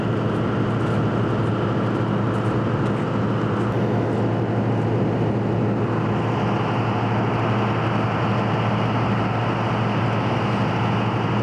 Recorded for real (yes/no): yes